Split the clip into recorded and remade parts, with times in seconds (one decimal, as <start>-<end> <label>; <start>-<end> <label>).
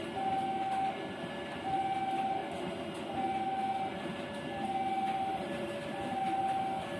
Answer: 0.0-7.0 recorded